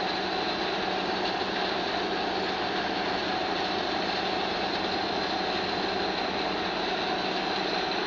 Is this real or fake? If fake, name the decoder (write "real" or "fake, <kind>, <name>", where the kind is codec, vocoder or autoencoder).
real